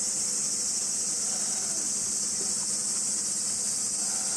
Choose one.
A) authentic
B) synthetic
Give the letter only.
A